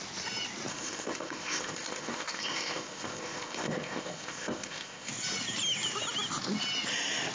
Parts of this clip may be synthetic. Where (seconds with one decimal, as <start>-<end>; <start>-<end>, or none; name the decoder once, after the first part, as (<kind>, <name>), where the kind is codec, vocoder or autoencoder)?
0.7-5.1 (codec, ZipCodec)